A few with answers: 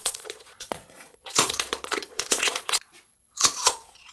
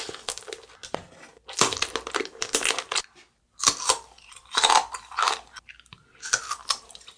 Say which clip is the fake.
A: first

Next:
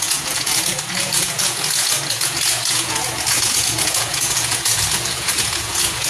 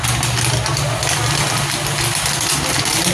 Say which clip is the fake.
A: first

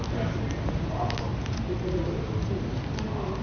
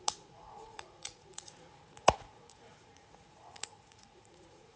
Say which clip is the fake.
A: second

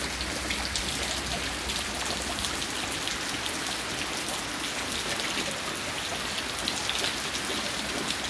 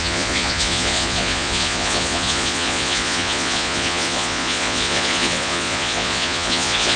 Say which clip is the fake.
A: second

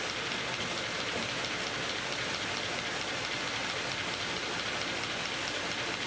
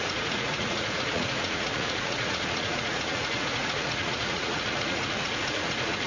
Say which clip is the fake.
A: second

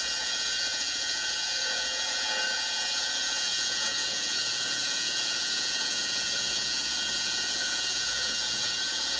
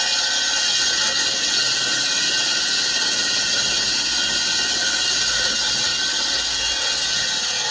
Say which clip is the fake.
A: first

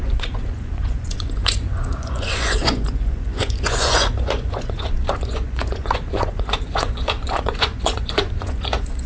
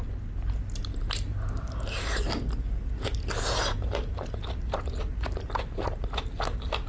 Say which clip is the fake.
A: first